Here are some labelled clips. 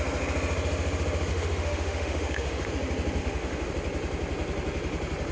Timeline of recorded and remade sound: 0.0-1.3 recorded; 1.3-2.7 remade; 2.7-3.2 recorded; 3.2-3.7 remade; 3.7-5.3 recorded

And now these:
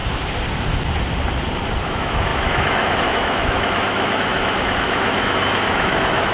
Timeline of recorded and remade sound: 0.0-1.8 recorded; 1.8-6.3 remade

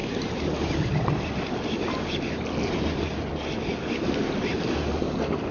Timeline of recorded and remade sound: 0.0-5.5 recorded

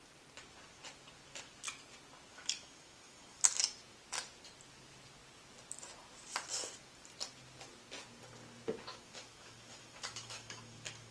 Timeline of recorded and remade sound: 0.0-2.3 recorded; 2.3-3.4 remade; 3.4-8.9 recorded; 8.9-11.1 remade

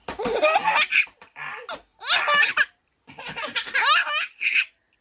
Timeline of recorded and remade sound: 0.0-5.0 recorded

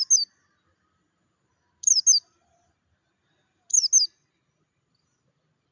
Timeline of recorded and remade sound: 0.0-5.7 recorded

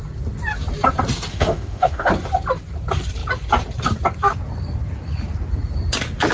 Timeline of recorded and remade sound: 0.0-1.3 recorded; 1.3-2.1 remade; 2.1-6.3 recorded